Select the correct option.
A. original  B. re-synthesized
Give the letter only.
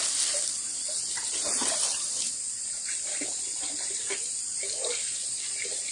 B